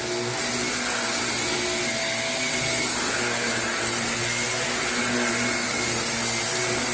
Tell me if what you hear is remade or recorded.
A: recorded